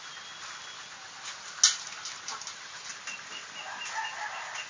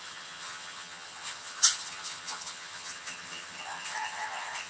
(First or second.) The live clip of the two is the first